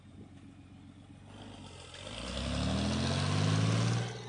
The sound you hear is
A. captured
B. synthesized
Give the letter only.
A